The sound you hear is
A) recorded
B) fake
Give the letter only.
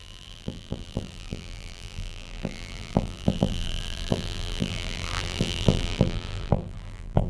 B